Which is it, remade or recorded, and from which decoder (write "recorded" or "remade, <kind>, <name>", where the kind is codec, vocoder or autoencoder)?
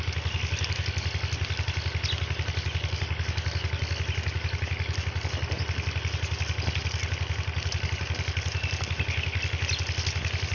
recorded